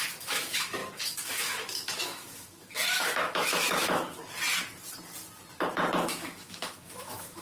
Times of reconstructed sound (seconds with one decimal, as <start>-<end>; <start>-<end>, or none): 0.0-4.2; 6.0-7.4